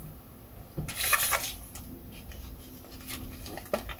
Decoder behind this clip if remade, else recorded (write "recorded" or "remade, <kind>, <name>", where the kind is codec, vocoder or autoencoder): recorded